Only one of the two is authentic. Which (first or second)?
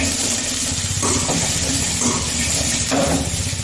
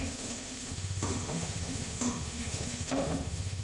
first